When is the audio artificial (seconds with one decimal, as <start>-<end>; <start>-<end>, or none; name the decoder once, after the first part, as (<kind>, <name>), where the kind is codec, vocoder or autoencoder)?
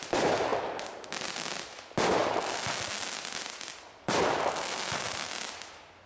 none